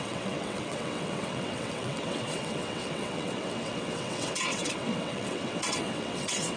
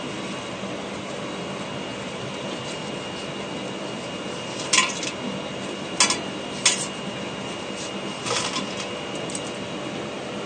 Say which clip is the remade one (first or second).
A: first